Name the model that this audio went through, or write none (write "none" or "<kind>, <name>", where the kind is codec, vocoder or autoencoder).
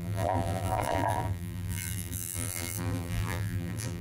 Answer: vocoder, BigVGAN v2